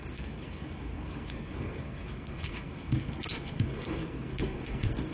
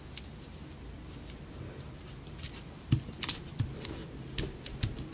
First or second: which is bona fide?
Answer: second